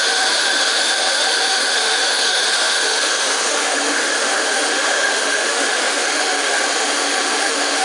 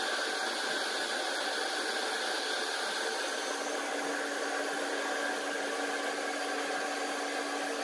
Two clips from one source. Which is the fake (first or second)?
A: first